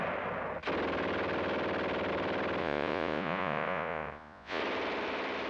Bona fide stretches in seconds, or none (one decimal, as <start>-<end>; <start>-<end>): 0.0-2.6; 4.6-5.5